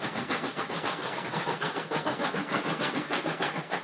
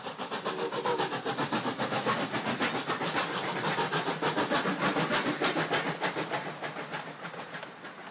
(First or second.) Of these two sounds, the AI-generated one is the first